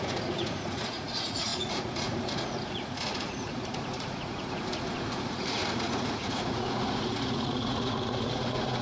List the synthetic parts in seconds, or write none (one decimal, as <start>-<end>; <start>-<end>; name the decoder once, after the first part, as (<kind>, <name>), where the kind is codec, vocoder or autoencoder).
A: 0.0-8.8 (vocoder, Vocos)